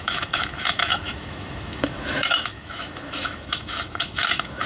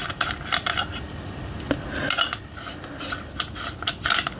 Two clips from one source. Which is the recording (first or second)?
second